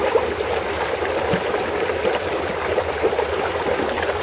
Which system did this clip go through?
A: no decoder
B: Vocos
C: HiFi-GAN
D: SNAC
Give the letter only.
A